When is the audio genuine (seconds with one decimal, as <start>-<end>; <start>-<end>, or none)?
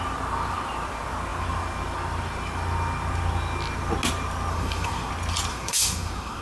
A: 0.0-4.5; 5.1-5.5